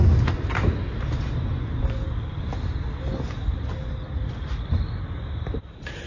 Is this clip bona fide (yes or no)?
yes